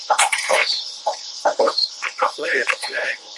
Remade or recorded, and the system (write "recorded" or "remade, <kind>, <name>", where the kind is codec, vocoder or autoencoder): remade, codec, HILCodec